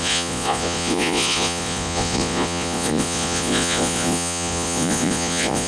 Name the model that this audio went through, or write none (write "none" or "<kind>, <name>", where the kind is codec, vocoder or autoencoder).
vocoder, Vocos